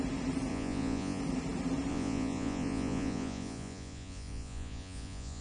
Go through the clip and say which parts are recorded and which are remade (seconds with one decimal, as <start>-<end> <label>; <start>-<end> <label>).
0.0-0.5 recorded; 0.5-1.2 remade; 1.2-1.9 recorded; 1.9-5.4 remade